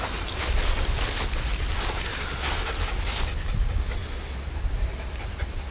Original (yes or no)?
yes